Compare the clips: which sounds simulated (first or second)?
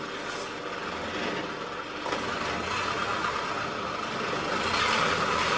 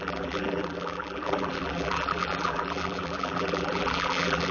second